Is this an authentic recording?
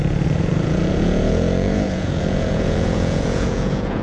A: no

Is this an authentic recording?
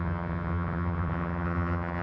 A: no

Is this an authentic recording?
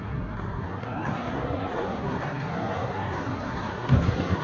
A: no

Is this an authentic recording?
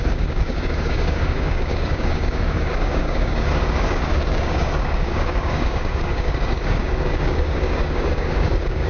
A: no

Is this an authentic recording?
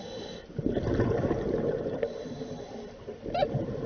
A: yes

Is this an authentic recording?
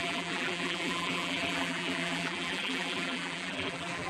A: no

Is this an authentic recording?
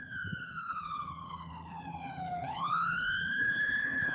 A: no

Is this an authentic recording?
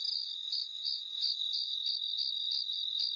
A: yes